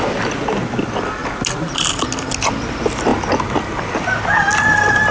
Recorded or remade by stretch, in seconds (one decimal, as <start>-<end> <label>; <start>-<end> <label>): 0.0-5.1 recorded